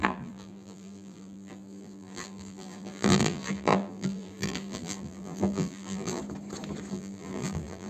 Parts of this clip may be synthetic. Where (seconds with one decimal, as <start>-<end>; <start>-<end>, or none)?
0.0-6.2; 6.9-7.9